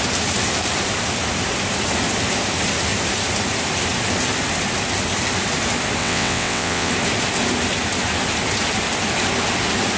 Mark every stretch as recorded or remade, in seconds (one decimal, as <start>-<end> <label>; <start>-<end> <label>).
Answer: 0.0-6.0 recorded; 6.0-6.9 remade; 6.9-10.0 recorded